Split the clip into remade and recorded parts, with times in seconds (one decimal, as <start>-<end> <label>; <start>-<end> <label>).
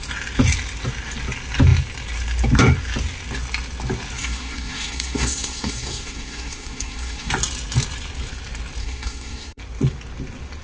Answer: 0.0-4.2 recorded; 4.2-7.3 remade; 7.3-8.8 recorded; 8.8-9.6 remade; 9.6-10.6 recorded